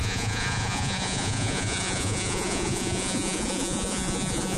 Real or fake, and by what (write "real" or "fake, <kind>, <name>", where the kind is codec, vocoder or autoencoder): fake, vocoder, Vocos